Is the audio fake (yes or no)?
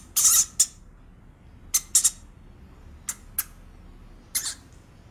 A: no